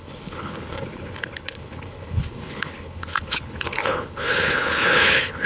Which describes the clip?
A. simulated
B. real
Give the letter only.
A